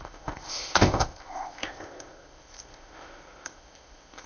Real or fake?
fake